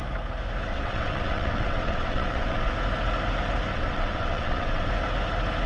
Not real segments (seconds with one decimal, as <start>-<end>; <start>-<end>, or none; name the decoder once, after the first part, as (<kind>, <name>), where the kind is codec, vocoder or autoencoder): 0.7-2.7 (vocoder, WaveNeXt); 3.7-4.9